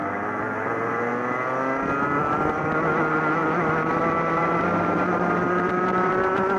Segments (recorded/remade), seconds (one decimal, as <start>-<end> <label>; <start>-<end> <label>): 0.0-1.1 remade; 1.1-4.4 recorded; 4.4-6.1 remade; 6.1-6.6 recorded